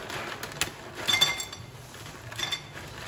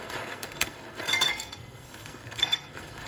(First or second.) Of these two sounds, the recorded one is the first